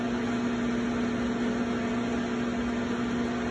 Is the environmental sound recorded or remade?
recorded